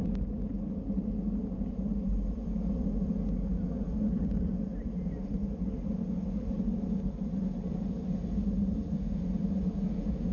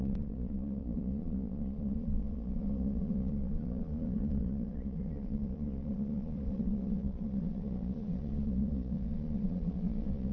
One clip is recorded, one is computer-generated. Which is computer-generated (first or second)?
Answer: second